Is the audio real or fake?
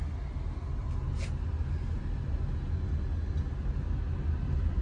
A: real